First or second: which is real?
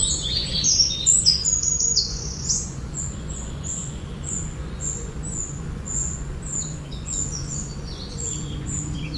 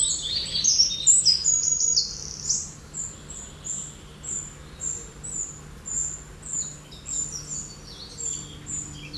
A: second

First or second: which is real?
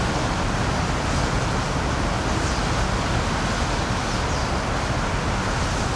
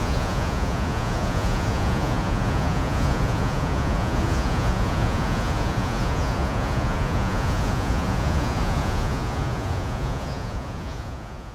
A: first